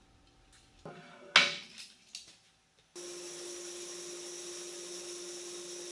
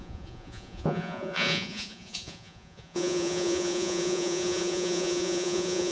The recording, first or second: first